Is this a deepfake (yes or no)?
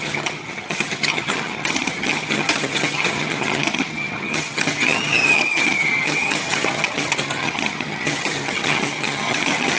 yes